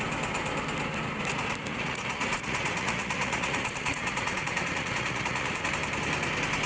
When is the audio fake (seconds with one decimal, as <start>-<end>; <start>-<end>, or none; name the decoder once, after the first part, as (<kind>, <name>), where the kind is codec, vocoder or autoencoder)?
1.7-5.7 (vocoder, Vocos)